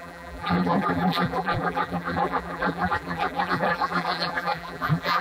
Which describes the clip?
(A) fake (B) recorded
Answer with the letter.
A